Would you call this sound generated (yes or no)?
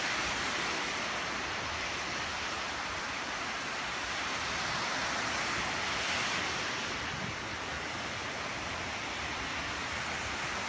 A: no